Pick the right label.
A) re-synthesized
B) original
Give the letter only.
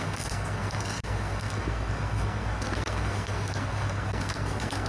A